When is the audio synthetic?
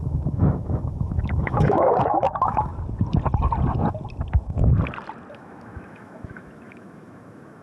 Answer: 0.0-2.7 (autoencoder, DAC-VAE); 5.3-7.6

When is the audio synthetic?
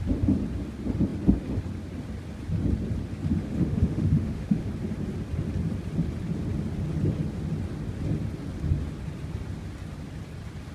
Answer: 3.4-4.7 (autoencoder, DAC-VAE)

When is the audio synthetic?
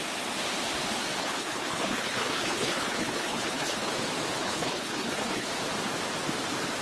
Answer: 1.2-3.9 (codec, HILCodec); 4.4-5.5